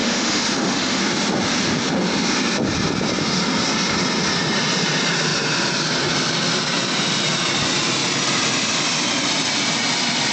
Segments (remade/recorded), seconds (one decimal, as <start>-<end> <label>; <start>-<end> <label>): 0.0-1.0 remade; 1.0-10.3 recorded